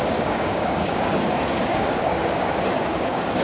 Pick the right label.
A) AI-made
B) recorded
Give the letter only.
A